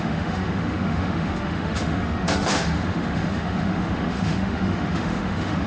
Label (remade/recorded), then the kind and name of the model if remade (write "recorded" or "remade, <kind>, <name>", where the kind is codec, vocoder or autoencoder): remade, autoencoder, DAC-VAE